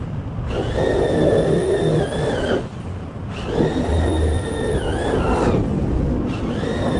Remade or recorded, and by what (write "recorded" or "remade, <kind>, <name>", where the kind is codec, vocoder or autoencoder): recorded